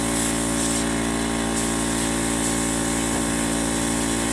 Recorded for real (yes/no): yes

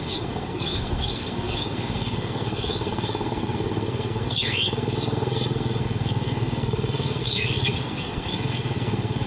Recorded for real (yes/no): no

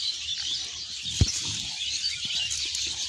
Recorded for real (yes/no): yes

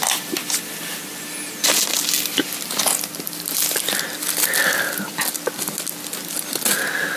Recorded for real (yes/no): yes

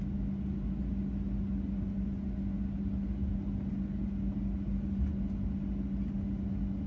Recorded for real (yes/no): yes